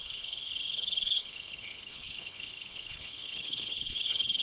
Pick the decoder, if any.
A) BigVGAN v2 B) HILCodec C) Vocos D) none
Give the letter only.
B